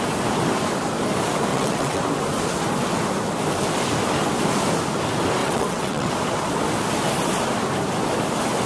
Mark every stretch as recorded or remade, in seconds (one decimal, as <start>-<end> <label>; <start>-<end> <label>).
0.0-1.5 recorded; 1.5-2.0 remade; 2.0-5.4 recorded; 5.4-6.1 remade; 6.1-8.7 recorded